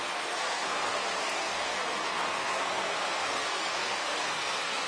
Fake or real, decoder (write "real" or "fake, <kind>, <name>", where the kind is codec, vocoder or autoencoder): fake, codec, SNAC